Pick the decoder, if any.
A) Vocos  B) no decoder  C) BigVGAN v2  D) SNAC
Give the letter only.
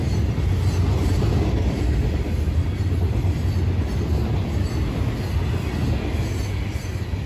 B